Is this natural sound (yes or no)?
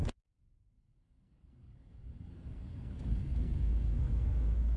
no